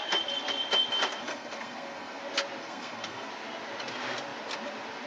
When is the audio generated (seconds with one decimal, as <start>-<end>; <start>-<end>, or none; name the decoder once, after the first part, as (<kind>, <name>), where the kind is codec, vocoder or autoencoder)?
1.2-2.2 (codec, SNAC); 2.6-3.3